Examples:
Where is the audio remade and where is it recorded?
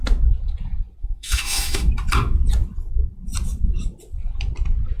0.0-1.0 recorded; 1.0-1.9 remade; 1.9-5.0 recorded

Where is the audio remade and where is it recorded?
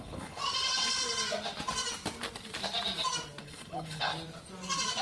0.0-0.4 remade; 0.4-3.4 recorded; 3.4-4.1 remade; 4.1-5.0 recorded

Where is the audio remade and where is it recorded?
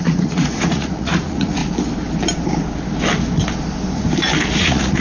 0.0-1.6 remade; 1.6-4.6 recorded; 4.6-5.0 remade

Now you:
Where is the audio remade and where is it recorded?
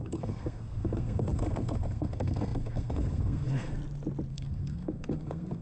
0.0-3.8 remade; 3.8-4.3 recorded; 4.3-5.6 remade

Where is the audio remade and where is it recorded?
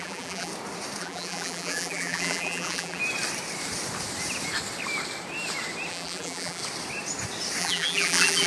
0.0-0.5 remade; 0.5-1.0 recorded; 1.0-3.0 remade; 3.0-5.9 recorded; 5.9-6.6 remade; 6.6-7.6 recorded; 7.6-8.5 remade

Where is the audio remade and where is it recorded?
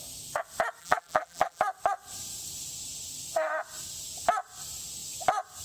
0.0-0.8 recorded; 0.8-1.6 remade; 1.6-5.6 recorded